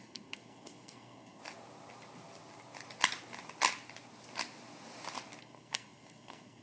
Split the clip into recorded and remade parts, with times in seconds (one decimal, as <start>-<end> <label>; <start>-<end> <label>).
0.0-1.4 remade; 1.4-5.4 recorded; 5.4-6.6 remade